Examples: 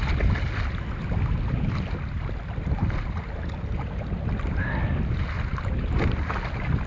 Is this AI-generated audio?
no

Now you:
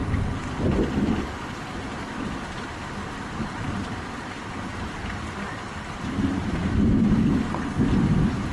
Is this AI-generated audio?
no